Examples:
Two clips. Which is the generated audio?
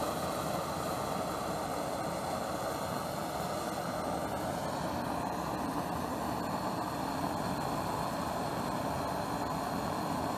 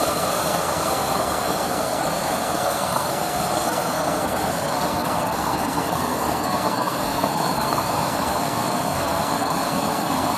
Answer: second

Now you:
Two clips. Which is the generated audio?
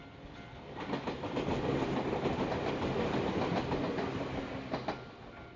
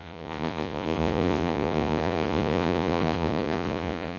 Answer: second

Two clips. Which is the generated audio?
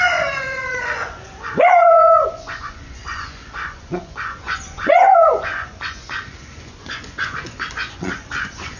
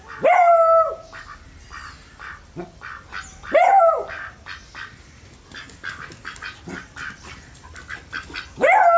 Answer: first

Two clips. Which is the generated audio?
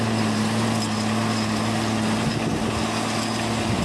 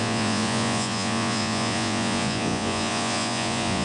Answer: second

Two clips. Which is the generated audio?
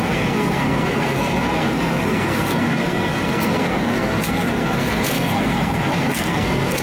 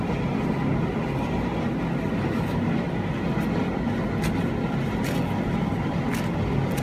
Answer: first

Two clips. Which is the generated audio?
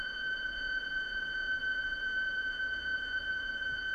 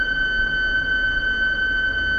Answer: first